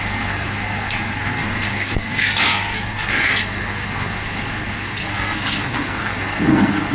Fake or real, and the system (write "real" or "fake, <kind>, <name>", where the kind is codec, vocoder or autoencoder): fake, codec, SNAC